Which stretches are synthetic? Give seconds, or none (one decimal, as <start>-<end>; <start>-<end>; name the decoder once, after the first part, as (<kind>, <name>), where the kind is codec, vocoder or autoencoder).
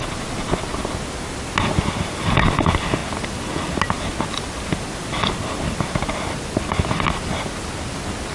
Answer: none